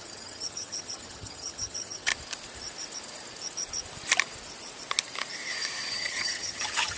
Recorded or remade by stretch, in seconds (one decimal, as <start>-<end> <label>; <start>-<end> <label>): 0.0-2.1 remade; 2.1-5.9 recorded; 5.9-7.0 remade